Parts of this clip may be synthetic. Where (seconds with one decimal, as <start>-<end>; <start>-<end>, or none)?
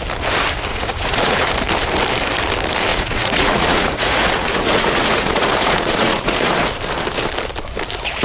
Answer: 0.7-1.5; 2.9-6.5